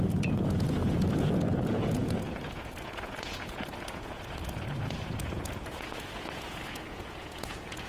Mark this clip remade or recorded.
remade